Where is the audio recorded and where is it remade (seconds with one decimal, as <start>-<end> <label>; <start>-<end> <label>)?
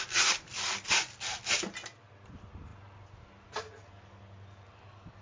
0.0-5.2 recorded